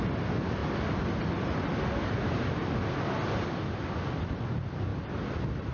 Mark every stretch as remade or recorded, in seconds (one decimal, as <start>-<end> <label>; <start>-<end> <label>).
0.0-5.7 recorded